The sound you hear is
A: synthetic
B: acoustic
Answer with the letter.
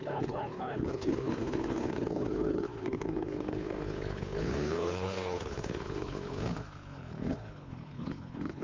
A